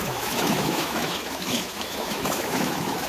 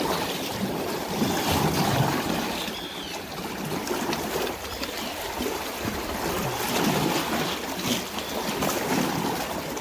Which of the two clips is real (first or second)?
second